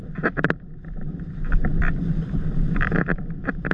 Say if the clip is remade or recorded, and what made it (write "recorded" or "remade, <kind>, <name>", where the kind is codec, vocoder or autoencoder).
remade, vocoder, BigVGAN v2